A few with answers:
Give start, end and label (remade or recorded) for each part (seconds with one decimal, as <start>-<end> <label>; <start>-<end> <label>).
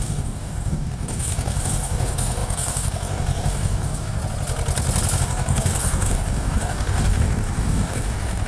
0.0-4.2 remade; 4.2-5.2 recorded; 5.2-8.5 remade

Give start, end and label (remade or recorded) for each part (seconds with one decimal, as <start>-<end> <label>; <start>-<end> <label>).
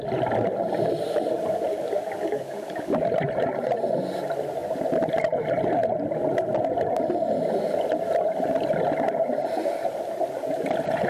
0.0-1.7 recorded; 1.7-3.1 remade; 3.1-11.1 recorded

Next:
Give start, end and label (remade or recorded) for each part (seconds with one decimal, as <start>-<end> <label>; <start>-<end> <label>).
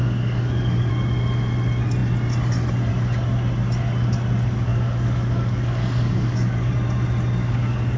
0.0-0.9 remade; 0.9-4.7 recorded; 4.7-6.7 remade; 6.7-7.4 recorded; 7.4-8.0 remade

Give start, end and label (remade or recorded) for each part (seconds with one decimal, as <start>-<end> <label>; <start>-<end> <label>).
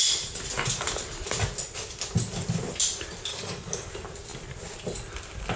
0.0-3.3 recorded; 3.3-3.9 remade; 3.9-5.6 recorded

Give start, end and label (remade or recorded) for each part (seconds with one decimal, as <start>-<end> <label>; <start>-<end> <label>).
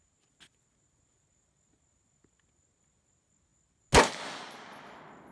0.0-5.3 recorded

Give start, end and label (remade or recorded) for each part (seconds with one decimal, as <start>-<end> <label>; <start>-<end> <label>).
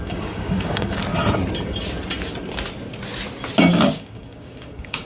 0.0-1.0 remade; 1.0-3.7 recorded; 3.7-5.0 remade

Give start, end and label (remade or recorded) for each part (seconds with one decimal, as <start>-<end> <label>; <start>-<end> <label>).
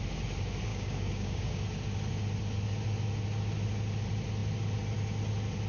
0.0-0.7 recorded; 0.7-1.6 remade; 1.6-5.7 recorded